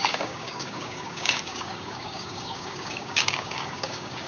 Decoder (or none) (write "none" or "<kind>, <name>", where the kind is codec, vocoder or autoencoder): codec, DAC